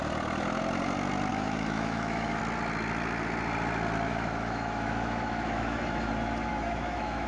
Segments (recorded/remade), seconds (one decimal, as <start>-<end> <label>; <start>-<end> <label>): 0.0-1.3 recorded; 1.3-2.4 remade; 2.4-4.1 recorded; 4.1-6.1 remade; 6.1-6.5 recorded; 6.5-7.3 remade